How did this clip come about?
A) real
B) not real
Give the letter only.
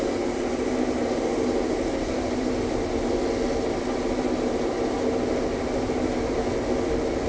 A